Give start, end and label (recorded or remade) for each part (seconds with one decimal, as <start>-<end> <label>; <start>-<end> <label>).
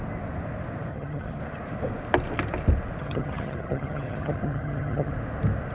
0.0-0.9 recorded; 0.9-1.4 remade; 1.4-3.0 recorded; 3.0-5.1 remade; 5.1-5.7 recorded